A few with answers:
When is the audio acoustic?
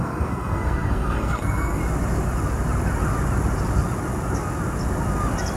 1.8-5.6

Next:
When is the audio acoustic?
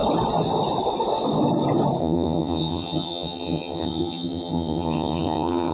0.0-2.0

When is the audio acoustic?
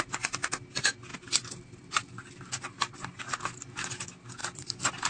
0.0-1.1; 3.8-4.4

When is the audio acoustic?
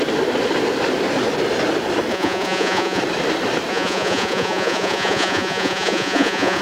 0.0-2.1; 3.0-3.7